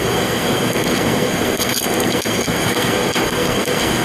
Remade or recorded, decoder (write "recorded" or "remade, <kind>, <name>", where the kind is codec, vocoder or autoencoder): remade, codec, SNAC